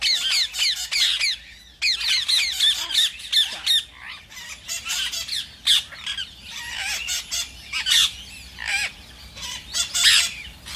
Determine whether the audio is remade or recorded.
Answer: recorded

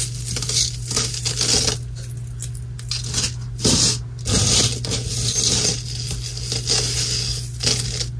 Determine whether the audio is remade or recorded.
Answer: recorded